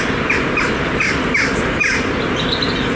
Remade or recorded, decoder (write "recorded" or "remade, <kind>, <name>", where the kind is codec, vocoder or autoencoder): recorded